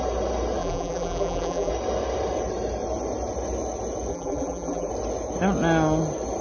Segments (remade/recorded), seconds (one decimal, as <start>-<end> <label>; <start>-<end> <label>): 0.0-0.6 recorded; 0.6-1.7 remade; 1.7-4.1 recorded; 4.1-4.9 remade; 4.9-6.4 recorded